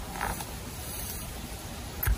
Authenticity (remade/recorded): recorded